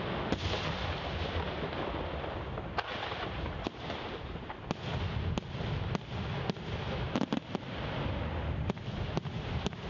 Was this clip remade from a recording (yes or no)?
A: no